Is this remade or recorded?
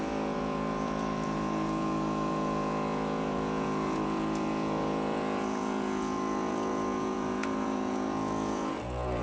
remade